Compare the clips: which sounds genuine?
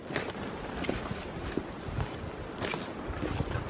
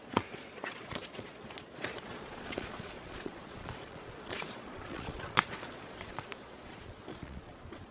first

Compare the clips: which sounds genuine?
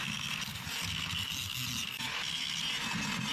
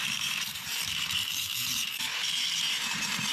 first